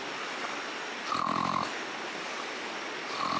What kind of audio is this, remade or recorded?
recorded